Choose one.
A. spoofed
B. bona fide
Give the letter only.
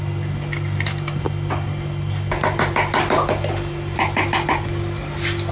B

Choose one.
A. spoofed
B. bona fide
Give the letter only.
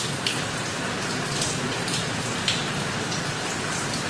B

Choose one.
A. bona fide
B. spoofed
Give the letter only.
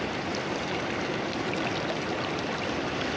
A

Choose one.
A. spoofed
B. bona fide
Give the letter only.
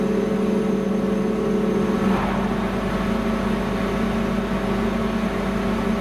B